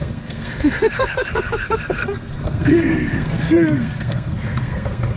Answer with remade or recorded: remade